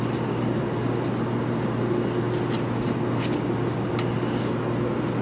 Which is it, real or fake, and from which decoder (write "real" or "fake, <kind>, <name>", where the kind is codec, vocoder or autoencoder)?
real